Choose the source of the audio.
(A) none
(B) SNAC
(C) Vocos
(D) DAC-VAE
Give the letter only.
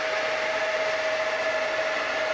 A